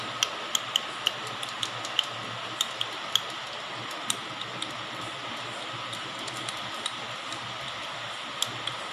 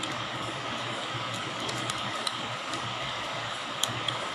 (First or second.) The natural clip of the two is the first